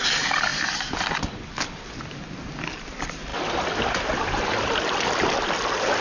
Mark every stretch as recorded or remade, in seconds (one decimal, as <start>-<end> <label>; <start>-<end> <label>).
0.0-6.0 recorded

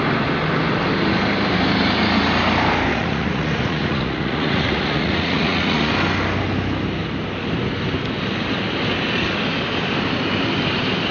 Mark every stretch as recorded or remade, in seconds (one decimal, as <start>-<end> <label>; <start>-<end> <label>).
0.0-2.9 recorded; 2.9-5.9 remade; 5.9-11.1 recorded

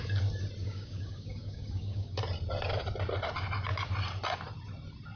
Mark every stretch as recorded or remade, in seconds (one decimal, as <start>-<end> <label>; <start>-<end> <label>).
0.0-0.6 recorded; 0.6-2.2 remade; 2.2-5.2 recorded

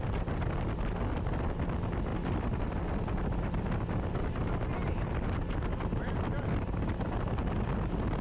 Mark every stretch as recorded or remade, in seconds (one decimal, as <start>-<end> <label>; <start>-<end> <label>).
0.0-8.2 recorded